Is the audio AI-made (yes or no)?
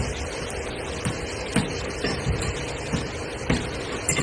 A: no